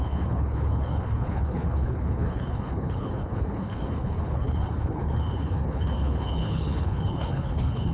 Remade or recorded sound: remade